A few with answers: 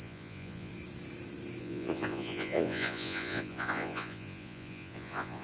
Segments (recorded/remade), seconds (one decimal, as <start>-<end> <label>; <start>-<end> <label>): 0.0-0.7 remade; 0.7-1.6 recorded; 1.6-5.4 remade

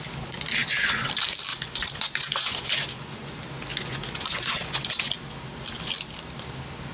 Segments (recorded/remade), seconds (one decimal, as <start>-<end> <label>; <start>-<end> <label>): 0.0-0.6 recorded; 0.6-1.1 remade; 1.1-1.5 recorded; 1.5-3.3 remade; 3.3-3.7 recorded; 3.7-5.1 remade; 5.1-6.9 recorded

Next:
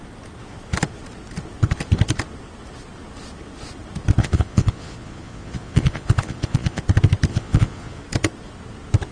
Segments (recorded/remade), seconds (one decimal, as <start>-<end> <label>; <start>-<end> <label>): 0.0-4.2 recorded; 4.2-6.8 remade; 6.8-7.3 recorded; 7.3-8.0 remade; 8.0-9.1 recorded

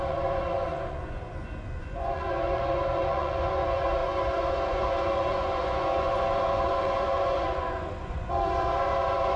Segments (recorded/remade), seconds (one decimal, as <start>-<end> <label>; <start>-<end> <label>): 0.0-9.4 remade